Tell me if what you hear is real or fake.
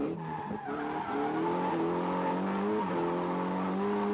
real